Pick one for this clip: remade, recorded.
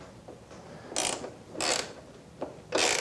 recorded